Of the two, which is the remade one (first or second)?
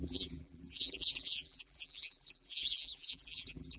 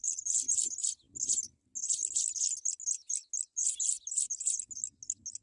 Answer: first